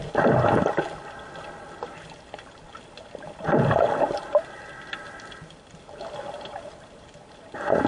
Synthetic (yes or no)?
no